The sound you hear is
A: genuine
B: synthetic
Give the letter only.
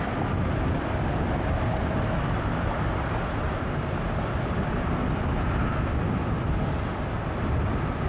A